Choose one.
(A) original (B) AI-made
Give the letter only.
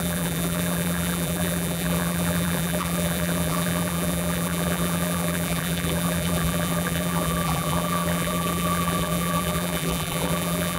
B